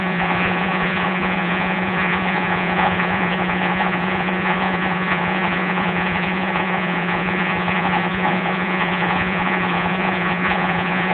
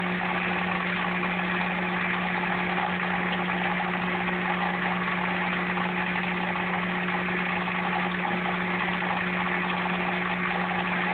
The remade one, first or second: first